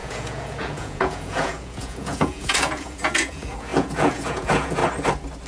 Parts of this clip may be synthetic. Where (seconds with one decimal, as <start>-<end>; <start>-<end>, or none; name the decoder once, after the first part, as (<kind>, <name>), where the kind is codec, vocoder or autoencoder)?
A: 0.0-4.8 (vocoder, Vocos)